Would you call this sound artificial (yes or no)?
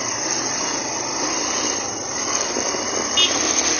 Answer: no